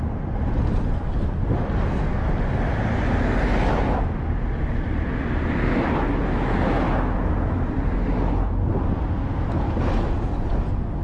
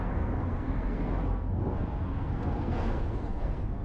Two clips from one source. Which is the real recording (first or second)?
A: first